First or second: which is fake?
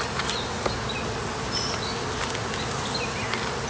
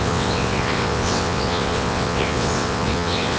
second